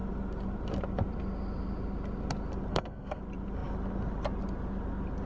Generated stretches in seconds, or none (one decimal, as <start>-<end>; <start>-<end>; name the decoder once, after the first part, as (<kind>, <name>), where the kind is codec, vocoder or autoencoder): 2.7-3.2 (codec, SNAC)